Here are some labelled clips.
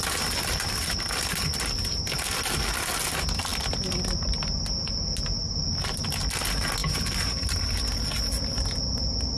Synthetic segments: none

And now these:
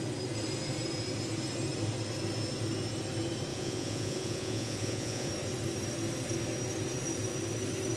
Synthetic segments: 3.5-5.3 (vocoder, Vocos)

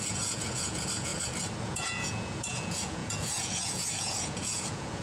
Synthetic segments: 0.0-1.1 (vocoder, Vocos); 1.6-5.0